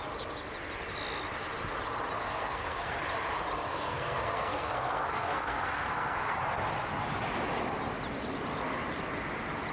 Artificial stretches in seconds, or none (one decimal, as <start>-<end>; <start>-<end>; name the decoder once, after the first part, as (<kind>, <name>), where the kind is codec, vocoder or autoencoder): 2.2-3.0 (codec, SNAC); 3.7-6.4